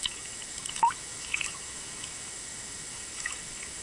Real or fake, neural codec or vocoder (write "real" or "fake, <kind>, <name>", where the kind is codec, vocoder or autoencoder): fake, autoencoder, DAC-VAE